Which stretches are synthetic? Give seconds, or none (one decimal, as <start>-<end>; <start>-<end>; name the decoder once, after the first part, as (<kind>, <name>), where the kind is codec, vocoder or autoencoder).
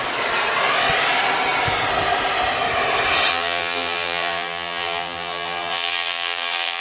3.3-6.8 (vocoder, BigVGAN v2)